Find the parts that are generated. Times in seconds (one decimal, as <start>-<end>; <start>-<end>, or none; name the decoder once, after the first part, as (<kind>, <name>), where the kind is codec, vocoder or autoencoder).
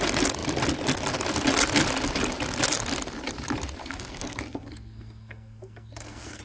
3.8-6.4 (codec, SNAC)